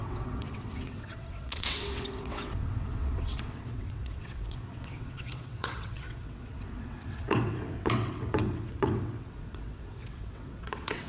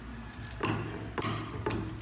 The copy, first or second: first